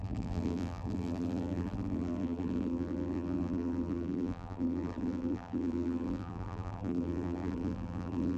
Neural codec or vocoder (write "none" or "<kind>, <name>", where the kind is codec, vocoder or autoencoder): vocoder, BigVGAN v2